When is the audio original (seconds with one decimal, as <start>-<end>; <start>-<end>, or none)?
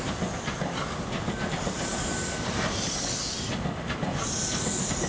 0.0-5.1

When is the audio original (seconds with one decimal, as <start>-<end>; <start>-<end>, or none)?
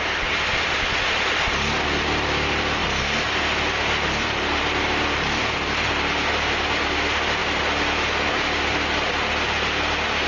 0.0-10.3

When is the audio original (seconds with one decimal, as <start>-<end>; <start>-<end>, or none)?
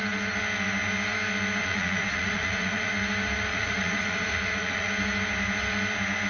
0.0-1.6; 2.9-3.5; 4.9-6.3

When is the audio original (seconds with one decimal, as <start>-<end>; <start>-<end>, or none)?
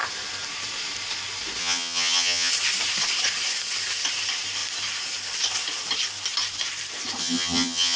0.0-1.6; 2.5-7.2